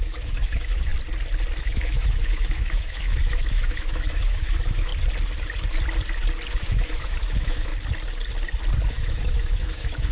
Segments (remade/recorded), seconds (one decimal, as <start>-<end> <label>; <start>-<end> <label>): 0.0-0.9 remade; 0.9-1.6 recorded; 1.6-4.9 remade; 4.9-6.5 recorded; 6.5-7.7 remade; 7.7-8.9 recorded; 8.9-10.1 remade